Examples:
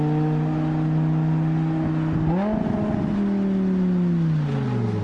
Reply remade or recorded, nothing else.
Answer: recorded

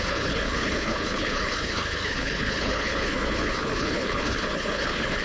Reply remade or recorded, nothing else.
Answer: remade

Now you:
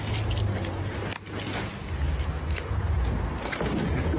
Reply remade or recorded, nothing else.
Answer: recorded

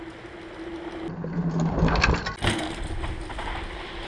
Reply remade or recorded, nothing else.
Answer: recorded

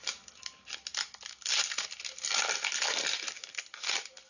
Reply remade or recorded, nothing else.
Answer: recorded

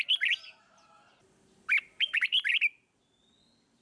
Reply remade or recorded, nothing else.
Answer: recorded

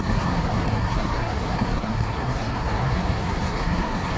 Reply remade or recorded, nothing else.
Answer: remade